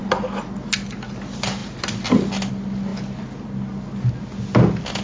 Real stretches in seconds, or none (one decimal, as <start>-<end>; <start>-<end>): 0.0-5.0